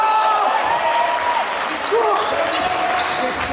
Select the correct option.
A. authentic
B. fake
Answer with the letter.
A